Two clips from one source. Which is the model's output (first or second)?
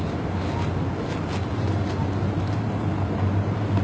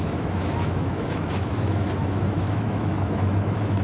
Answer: second